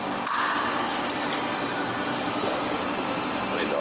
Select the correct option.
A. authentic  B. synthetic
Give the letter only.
B